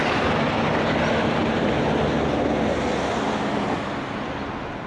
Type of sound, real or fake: real